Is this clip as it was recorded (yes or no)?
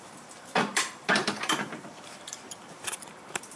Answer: no